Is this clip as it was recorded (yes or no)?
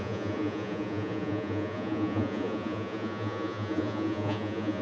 no